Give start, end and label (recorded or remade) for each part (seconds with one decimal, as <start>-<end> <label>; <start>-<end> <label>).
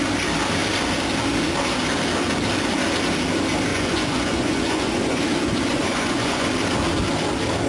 0.0-3.7 recorded; 3.7-5.2 remade; 5.2-5.7 recorded; 5.7-6.5 remade; 6.5-7.7 recorded